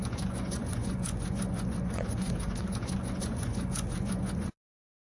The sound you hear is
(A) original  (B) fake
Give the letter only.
B